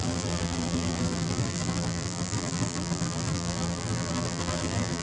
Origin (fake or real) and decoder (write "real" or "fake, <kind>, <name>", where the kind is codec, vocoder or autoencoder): fake, vocoder, BigVGAN v2